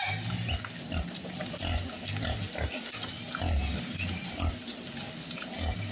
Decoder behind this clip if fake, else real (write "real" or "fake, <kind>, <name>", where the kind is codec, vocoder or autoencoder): real